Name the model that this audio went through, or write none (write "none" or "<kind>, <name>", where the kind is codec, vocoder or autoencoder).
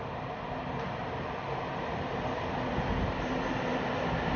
none